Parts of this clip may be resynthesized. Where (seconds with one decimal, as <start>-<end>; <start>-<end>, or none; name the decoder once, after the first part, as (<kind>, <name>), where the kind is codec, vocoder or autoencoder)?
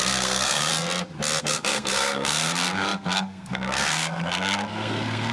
0.0-0.7 (codec, SNAC); 1.4-5.3